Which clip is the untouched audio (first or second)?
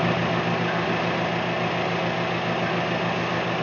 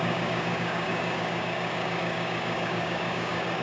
first